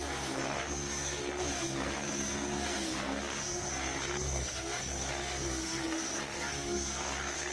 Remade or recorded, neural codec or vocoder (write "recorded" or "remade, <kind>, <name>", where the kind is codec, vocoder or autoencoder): remade, codec, SNAC